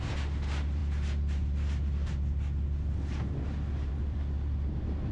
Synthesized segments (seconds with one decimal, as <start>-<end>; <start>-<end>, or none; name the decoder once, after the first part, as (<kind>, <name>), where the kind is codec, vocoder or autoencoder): none